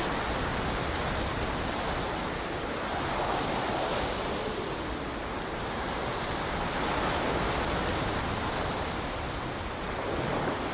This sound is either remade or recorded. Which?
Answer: recorded